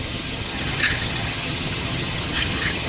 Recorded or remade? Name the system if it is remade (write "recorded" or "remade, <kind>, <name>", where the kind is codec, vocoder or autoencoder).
remade, vocoder, HiFi-GAN